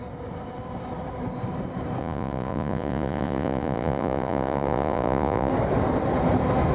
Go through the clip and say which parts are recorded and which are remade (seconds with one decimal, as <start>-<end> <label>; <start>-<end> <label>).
0.0-2.0 recorded; 2.0-5.5 remade; 5.5-6.7 recorded